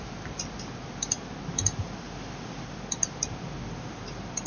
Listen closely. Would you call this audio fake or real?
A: real